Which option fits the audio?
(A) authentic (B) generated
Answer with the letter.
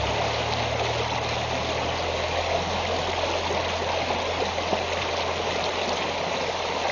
A